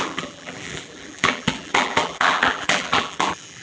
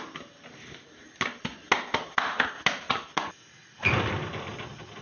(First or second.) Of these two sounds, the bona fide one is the second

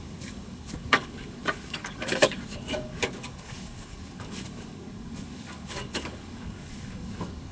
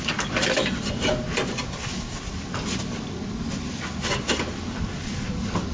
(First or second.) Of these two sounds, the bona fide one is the second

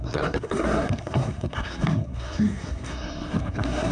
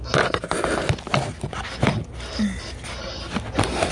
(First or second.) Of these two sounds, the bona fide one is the second